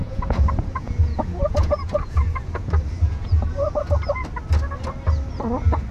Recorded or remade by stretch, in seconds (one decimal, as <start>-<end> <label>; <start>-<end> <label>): 0.0-2.7 remade; 2.7-3.1 recorded; 3.1-3.6 remade; 3.6-5.9 recorded